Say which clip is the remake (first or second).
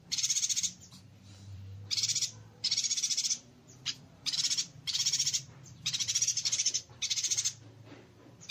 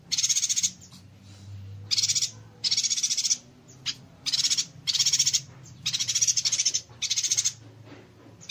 first